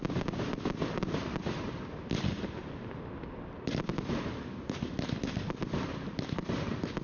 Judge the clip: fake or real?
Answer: real